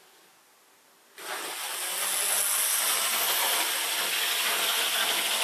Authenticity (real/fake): real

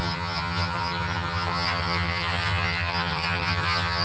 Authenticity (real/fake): fake